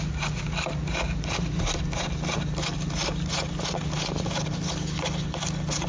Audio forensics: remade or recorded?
recorded